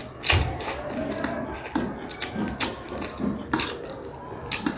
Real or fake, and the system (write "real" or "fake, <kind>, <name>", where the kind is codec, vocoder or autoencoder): real